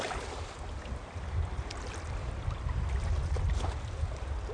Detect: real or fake real